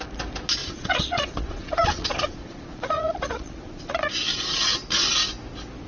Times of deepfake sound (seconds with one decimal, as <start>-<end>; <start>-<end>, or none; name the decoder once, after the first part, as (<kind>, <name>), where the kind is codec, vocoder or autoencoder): 0.6-4.1 (vocoder, Vocos)

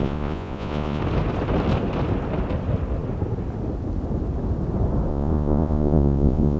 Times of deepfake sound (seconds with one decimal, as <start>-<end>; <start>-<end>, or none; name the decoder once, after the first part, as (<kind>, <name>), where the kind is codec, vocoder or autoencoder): 0.0-1.0 (vocoder, Vocos); 5.1-6.6